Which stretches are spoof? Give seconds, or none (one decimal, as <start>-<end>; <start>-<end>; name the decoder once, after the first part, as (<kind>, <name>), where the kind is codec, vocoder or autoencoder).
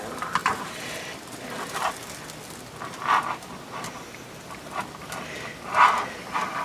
0.4-1.3 (vocoder, BigVGAN v2)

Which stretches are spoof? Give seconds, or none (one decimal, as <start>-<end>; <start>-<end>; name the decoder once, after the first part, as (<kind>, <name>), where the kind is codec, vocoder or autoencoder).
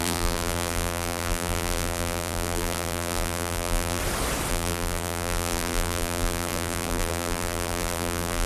0.0-4.0 (vocoder, BigVGAN v2); 4.5-8.5